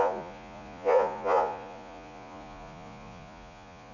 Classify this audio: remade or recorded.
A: remade